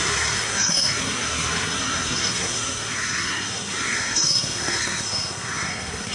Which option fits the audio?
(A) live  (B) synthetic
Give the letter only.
B